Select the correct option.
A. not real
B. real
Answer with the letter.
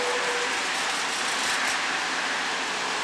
B